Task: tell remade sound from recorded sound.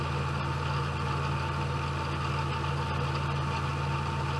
recorded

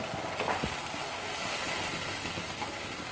recorded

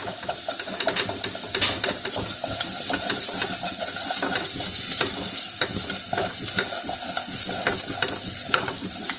recorded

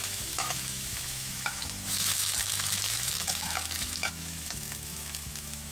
remade